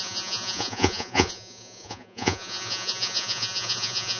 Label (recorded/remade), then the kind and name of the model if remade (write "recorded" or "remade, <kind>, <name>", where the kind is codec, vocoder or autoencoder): remade, vocoder, Vocos